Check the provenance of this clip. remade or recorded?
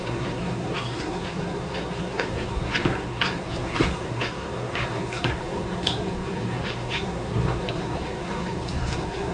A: remade